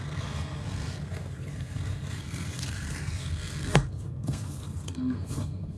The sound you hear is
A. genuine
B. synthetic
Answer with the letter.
B